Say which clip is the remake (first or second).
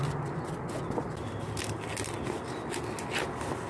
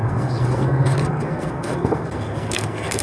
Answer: second